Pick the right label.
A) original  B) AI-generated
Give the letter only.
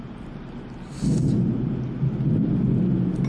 A